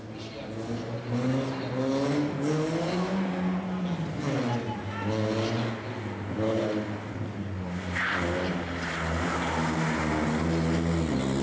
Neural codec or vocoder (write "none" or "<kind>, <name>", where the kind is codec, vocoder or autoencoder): none